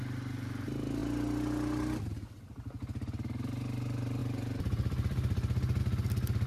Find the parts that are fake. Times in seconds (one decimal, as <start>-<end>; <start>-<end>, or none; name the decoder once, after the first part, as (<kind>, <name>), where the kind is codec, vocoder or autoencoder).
4.2-5.8 (vocoder, BigVGAN v2)